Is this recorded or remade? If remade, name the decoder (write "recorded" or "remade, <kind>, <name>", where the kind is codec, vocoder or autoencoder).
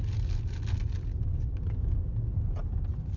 recorded